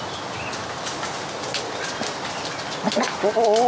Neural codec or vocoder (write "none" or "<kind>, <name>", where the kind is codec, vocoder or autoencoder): none